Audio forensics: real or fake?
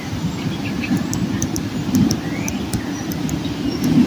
real